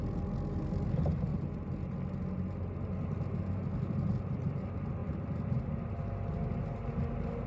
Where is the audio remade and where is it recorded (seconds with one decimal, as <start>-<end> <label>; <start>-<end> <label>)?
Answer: 0.0-7.5 recorded